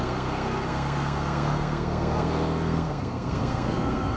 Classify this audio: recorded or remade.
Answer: remade